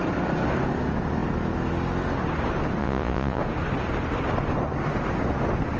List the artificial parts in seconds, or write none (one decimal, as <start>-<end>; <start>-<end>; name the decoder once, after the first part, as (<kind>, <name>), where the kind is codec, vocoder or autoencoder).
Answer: 2.8-3.4 (vocoder, Vocos)